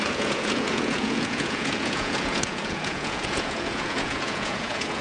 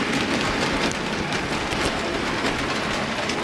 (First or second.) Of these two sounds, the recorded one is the second